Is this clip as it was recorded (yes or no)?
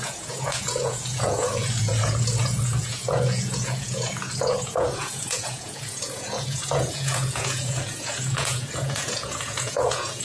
no